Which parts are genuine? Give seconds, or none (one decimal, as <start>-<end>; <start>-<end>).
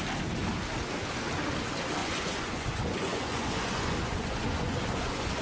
0.0-2.0